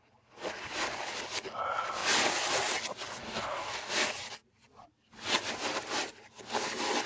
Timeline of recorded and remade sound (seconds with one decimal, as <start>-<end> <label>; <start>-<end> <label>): 0.0-3.2 recorded; 3.2-3.9 remade; 3.9-7.1 recorded